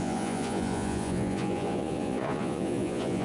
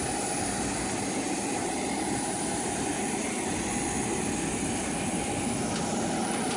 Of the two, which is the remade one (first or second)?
first